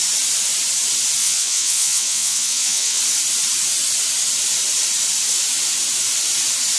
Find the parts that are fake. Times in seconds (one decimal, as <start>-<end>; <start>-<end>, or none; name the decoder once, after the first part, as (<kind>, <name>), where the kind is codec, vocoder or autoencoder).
1.2-3.0 (vocoder, WaveNeXt)